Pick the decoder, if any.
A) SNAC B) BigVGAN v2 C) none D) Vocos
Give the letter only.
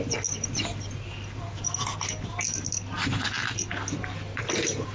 C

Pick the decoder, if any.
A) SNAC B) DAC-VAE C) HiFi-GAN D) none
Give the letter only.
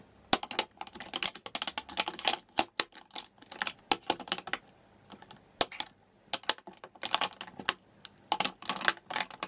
D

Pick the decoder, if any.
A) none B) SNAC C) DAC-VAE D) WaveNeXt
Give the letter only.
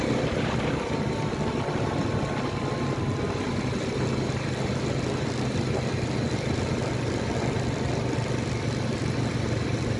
A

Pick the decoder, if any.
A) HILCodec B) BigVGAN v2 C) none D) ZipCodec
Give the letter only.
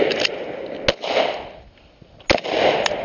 C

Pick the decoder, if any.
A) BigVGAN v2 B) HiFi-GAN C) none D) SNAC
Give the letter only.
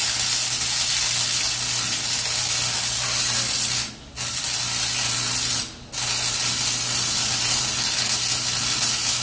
C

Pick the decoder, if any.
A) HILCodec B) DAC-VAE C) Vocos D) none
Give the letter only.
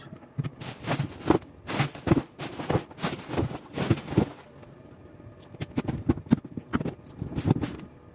D